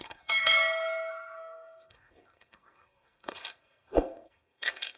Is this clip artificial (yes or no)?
yes